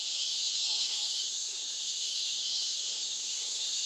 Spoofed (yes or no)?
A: yes